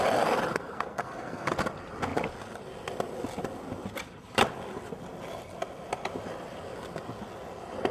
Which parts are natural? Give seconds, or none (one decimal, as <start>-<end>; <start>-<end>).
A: 0.0-0.5; 1.5-7.9